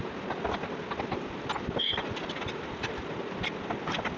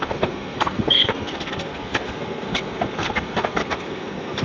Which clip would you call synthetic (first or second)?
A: second